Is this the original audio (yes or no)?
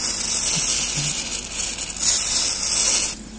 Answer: yes